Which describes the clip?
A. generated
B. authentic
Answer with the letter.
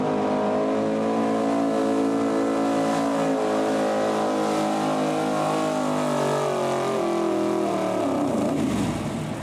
B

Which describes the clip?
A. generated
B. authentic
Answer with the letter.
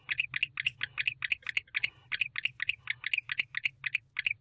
B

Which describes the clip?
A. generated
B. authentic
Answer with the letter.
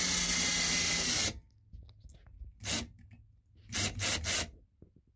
B